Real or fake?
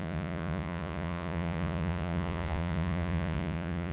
fake